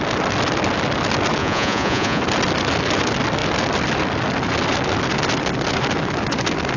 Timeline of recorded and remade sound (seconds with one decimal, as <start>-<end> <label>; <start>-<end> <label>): 0.0-1.4 recorded; 1.4-2.2 remade; 2.2-6.8 recorded